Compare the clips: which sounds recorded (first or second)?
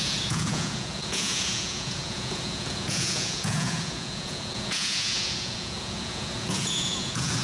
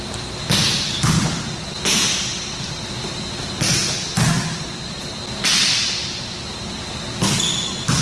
second